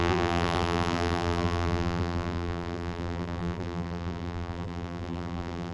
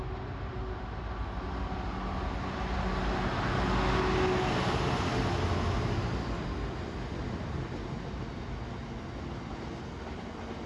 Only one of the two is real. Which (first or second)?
second